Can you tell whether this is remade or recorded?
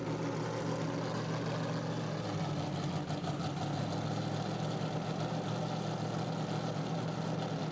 recorded